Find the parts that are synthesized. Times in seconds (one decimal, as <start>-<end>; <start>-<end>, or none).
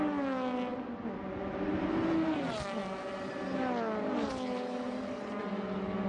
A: none